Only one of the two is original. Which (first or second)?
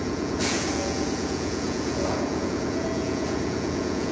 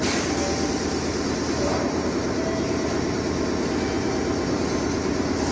second